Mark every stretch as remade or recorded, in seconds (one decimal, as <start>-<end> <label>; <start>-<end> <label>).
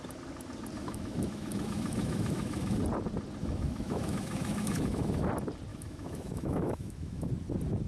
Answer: 0.0-0.8 recorded; 0.8-2.8 remade; 2.8-3.4 recorded; 3.4-5.3 remade; 5.3-5.7 recorded; 5.7-7.3 remade; 7.3-7.9 recorded